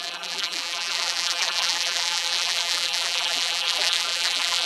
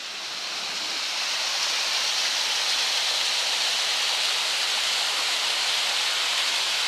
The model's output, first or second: first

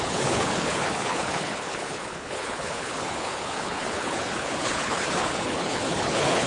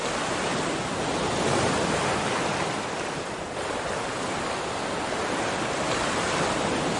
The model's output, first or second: first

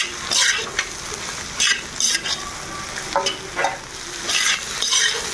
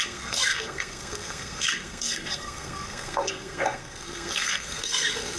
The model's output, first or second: second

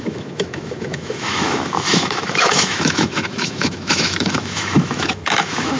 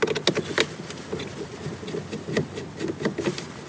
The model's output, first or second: first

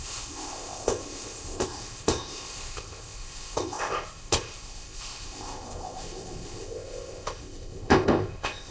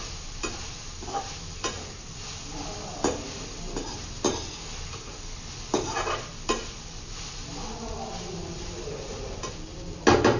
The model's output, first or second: first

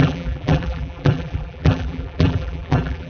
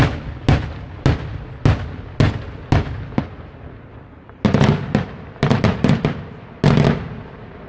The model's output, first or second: first